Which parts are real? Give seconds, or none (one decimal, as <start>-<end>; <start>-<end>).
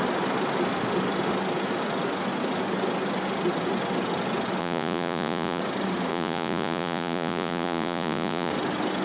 0.0-4.6; 5.6-6.1; 8.5-9.0